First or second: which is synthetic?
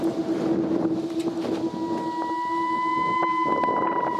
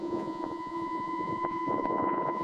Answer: second